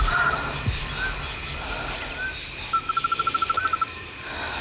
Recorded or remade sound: recorded